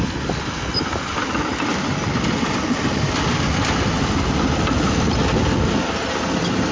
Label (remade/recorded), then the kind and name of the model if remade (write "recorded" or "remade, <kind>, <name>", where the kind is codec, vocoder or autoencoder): recorded